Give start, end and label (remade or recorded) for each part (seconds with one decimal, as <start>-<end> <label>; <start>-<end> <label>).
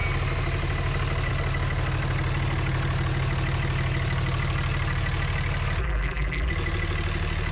0.0-5.8 recorded; 5.8-6.5 remade; 6.5-7.5 recorded